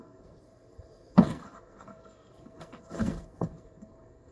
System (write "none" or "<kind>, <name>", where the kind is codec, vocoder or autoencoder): codec, SNAC